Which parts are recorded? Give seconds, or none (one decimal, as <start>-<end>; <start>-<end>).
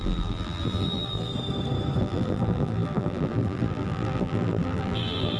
1.3-2.0